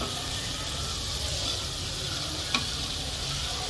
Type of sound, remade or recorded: recorded